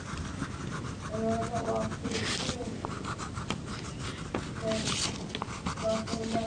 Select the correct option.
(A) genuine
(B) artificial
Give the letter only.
A